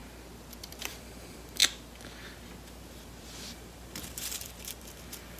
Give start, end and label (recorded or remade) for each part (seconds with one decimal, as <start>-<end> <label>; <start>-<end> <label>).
0.0-0.7 recorded; 0.7-1.6 remade; 1.6-2.8 recorded; 2.8-5.4 remade